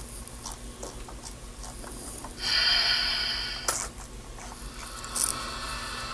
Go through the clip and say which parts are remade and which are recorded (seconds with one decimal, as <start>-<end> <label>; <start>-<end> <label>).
0.0-6.1 recorded